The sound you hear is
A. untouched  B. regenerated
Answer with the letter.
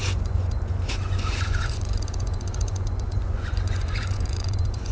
B